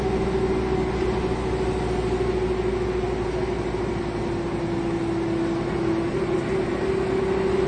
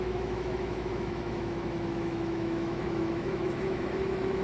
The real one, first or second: first